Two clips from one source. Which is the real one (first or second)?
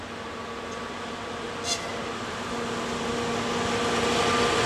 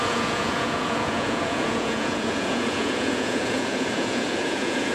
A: first